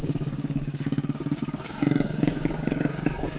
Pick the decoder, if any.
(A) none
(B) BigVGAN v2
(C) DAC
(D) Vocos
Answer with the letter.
C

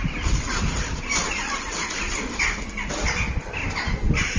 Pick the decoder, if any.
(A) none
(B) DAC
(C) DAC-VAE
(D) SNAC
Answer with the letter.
A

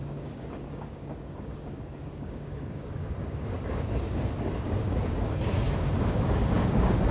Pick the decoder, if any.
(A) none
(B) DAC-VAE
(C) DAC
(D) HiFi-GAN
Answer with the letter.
C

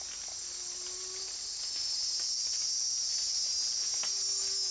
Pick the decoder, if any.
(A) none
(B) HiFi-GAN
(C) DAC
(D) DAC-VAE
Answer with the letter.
A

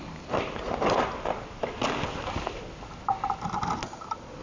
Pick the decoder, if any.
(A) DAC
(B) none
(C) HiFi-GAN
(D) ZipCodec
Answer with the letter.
B